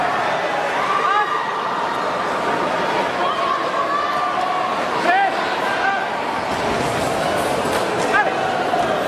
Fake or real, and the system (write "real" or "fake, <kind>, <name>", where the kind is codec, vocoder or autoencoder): real